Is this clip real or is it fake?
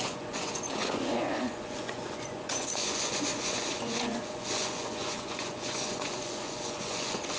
fake